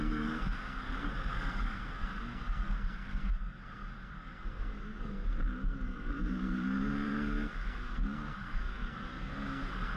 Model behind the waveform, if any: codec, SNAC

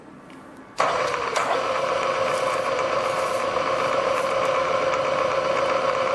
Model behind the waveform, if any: vocoder, BigVGAN v2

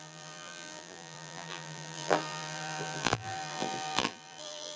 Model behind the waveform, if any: vocoder, BigVGAN v2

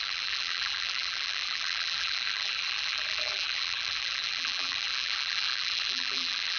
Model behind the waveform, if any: vocoder, BigVGAN v2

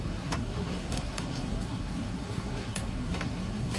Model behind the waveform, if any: codec, SNAC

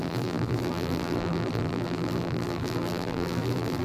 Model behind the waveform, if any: vocoder, BigVGAN v2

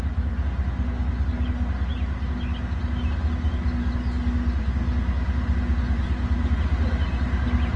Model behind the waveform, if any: none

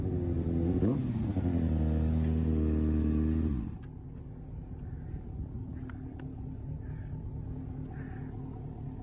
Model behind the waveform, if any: none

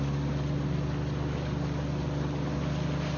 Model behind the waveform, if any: none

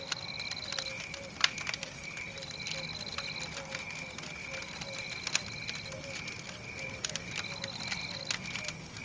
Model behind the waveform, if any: none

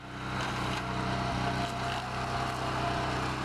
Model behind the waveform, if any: none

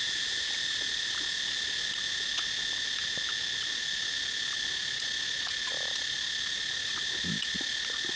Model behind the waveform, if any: none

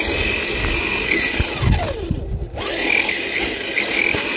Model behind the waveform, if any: none